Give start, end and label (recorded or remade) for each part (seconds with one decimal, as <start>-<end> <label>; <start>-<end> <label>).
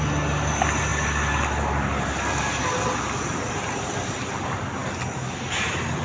0.0-6.0 recorded